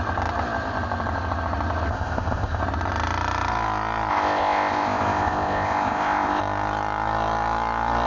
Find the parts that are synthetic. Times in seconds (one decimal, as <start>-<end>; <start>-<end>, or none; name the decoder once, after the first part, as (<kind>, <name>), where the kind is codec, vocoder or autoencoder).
1.9-2.6 (codec, ZipCodec); 4.1-6.4